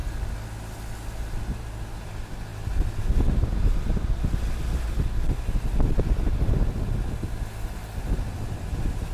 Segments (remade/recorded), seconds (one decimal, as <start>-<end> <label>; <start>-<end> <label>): 0.0-9.1 recorded